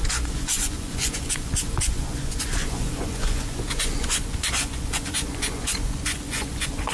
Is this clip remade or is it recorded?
remade